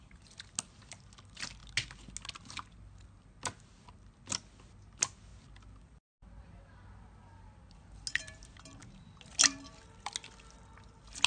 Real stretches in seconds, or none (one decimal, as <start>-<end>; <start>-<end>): 0.0-11.3